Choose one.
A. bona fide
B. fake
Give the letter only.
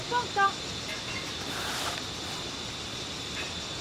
A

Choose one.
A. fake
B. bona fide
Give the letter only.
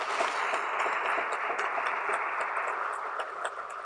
B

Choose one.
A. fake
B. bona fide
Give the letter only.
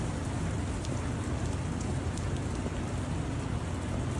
B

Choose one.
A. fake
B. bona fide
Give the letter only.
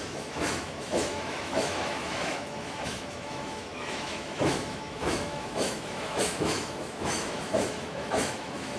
A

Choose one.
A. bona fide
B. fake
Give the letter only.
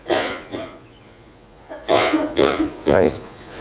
B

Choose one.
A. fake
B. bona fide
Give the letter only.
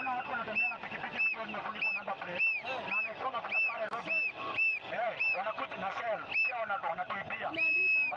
B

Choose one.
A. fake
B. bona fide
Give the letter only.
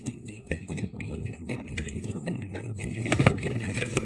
A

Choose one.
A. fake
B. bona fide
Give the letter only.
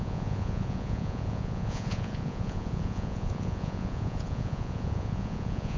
A